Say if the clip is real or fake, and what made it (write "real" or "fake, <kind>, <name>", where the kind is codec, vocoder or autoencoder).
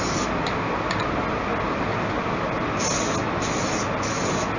real